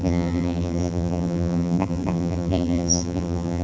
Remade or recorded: remade